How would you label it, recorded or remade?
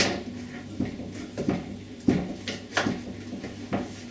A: recorded